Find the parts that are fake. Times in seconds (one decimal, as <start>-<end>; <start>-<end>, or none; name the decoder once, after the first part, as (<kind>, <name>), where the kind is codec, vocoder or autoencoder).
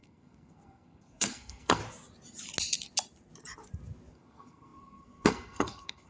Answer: 0.0-1.8 (codec, SNAC); 4.1-6.1